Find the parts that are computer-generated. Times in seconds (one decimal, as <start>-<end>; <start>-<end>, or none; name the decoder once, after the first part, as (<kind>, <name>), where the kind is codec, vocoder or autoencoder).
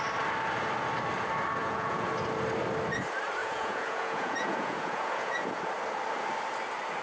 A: 1.6-2.1 (vocoder, Vocos); 3.4-5.6